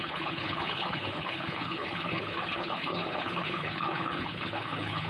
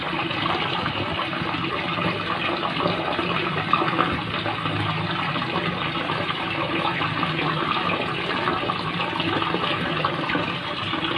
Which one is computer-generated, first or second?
first